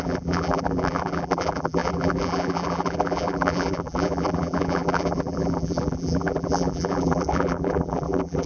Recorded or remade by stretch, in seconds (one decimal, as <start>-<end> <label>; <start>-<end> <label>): 0.0-8.5 remade